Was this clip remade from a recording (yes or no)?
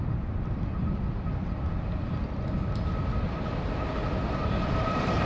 no